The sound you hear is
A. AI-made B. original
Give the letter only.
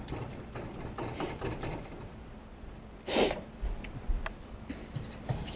A